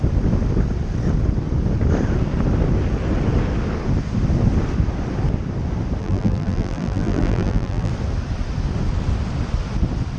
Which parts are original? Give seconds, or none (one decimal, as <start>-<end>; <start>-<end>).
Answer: 0.0-6.0; 7.9-10.2